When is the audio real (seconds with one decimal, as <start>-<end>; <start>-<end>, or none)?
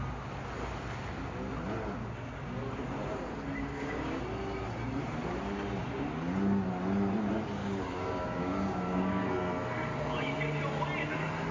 0.0-2.0; 2.6-3.6; 4.2-7.6; 9.3-11.5